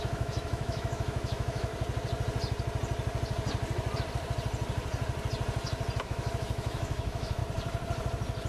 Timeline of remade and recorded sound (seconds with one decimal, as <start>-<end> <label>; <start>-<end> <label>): 0.0-1.7 remade; 1.7-6.0 recorded; 6.0-7.4 remade; 7.4-8.5 recorded